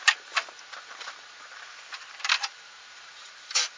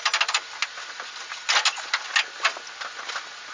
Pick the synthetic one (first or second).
first